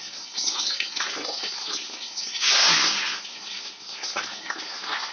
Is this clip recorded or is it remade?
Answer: remade